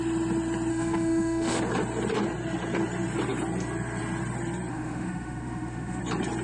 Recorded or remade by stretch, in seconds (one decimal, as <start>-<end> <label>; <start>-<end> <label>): 0.0-0.7 recorded; 0.7-1.6 remade; 1.6-4.7 recorded; 4.7-6.0 remade; 6.0-6.4 recorded